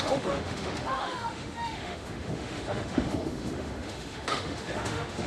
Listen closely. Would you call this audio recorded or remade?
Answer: remade